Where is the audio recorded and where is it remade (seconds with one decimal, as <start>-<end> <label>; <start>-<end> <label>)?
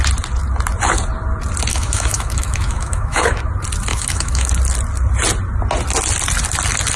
0.0-1.7 recorded; 1.7-3.4 remade; 3.4-3.9 recorded; 3.9-4.5 remade; 4.5-7.0 recorded